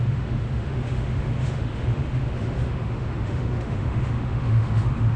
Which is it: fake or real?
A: fake